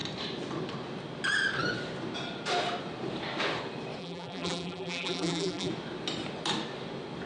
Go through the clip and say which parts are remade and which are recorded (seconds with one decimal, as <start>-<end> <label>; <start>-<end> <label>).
0.0-4.0 recorded; 4.0-5.7 remade; 5.7-7.3 recorded